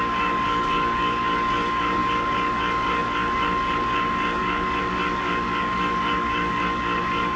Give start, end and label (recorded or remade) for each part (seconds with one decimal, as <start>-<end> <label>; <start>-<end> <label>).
0.0-7.4 remade